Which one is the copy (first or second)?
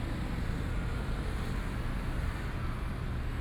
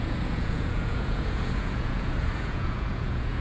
second